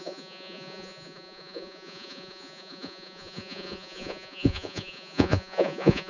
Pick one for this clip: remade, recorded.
remade